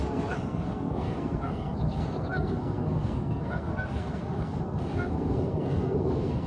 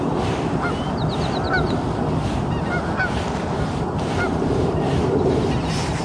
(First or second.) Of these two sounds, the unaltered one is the second